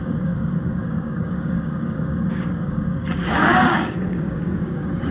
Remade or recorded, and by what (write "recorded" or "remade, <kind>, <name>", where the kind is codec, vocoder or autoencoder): remade, codec, DAC